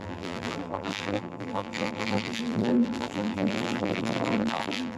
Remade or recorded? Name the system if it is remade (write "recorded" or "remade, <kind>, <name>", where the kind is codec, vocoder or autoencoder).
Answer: remade, vocoder, BigVGAN v2